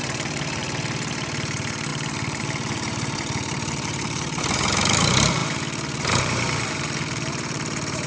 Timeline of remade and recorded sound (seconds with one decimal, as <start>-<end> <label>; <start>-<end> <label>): 0.0-8.1 remade